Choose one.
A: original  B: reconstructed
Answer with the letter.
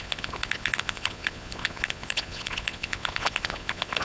B